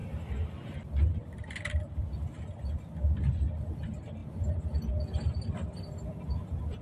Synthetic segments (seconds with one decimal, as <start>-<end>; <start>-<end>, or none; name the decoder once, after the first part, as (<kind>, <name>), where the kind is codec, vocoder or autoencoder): 4.2-4.9 (vocoder, BigVGAN v2)